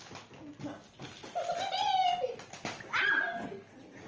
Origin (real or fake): real